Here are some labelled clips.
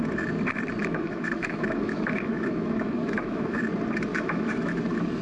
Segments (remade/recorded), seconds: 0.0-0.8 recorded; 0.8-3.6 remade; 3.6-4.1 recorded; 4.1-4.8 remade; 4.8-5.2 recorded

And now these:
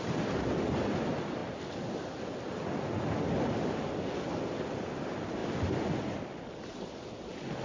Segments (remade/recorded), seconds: 0.0-7.6 recorded

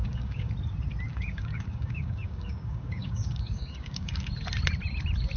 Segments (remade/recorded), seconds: 0.0-0.5 remade; 0.5-1.1 recorded; 1.1-4.3 remade; 4.3-5.4 recorded

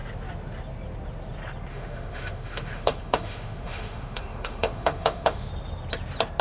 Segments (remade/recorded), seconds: 0.0-1.7 recorded; 1.7-5.5 remade; 5.5-6.4 recorded

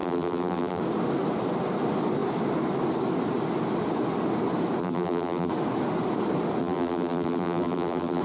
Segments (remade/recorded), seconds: 0.0-0.8 remade; 0.8-4.8 recorded; 4.8-5.5 remade; 5.5-6.6 recorded; 6.6-8.2 remade

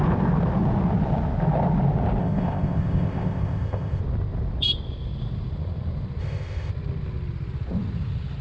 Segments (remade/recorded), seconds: 0.0-2.2 recorded; 2.2-4.0 remade; 4.0-6.2 recorded; 6.2-6.7 remade; 6.7-8.4 recorded